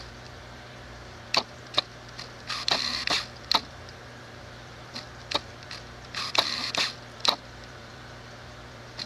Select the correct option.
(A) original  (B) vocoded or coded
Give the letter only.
B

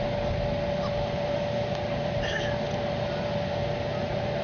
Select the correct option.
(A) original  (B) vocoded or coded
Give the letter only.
A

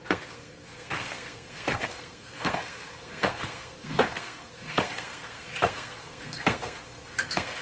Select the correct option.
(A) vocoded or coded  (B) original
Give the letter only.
A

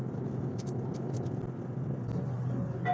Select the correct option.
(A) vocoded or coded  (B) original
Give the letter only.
B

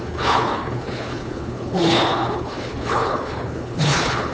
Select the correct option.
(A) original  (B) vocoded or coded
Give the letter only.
B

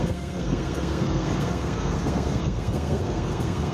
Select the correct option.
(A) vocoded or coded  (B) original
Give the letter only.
A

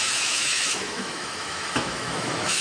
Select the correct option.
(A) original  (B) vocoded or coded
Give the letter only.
B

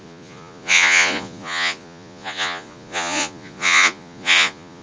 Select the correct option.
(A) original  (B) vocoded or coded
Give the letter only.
B